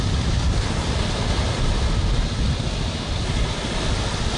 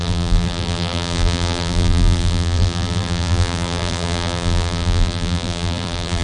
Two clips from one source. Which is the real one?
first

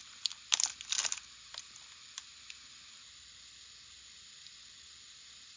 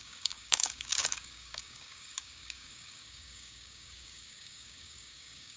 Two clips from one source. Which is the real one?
first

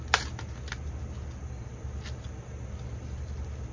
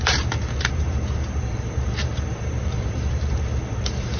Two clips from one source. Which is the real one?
first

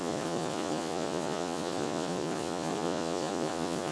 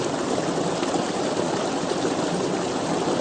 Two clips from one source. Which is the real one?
second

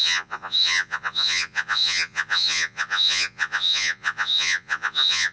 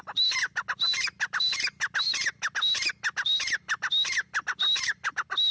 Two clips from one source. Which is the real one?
second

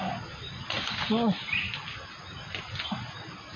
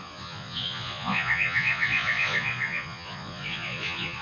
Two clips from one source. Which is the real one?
first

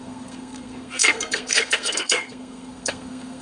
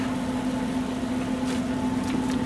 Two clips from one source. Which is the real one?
second